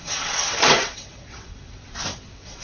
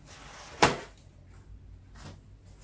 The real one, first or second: second